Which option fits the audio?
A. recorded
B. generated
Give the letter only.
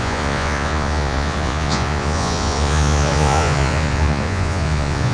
B